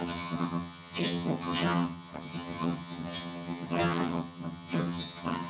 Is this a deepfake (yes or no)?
yes